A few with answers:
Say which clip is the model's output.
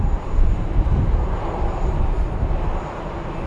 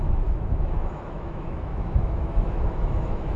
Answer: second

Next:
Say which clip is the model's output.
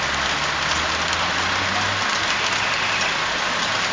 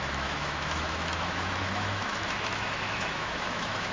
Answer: second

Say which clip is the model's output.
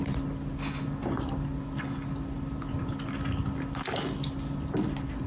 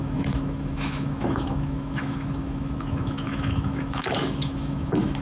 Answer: second